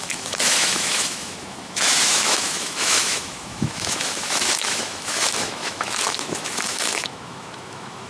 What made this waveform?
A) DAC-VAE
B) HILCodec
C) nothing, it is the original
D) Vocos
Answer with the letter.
A